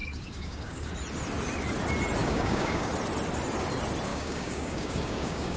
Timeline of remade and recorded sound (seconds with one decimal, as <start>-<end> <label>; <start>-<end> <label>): 0.0-0.9 remade; 0.9-2.2 recorded; 2.2-2.9 remade; 2.9-4.1 recorded; 4.1-5.6 remade